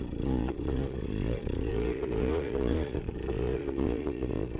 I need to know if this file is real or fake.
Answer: fake